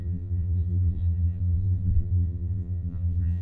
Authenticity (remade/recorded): remade